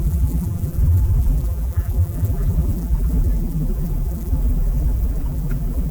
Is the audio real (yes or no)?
no